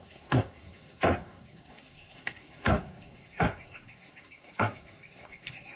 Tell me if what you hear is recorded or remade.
remade